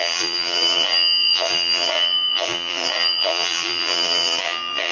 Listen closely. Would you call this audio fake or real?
fake